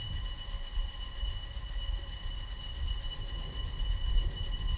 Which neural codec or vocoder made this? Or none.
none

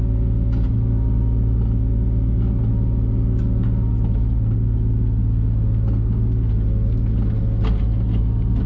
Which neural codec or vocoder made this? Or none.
none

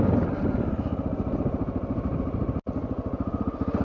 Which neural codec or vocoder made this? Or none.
none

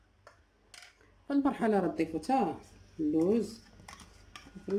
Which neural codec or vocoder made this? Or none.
none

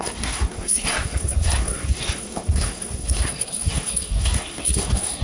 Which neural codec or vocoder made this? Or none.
codec, SNAC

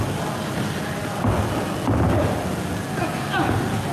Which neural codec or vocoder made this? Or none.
none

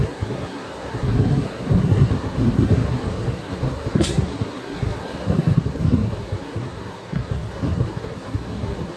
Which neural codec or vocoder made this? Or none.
codec, SNAC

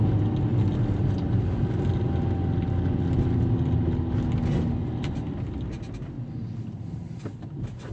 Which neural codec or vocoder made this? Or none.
none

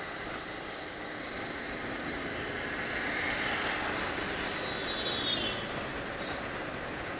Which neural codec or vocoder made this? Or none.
none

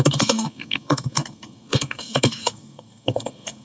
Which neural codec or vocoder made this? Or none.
codec, SNAC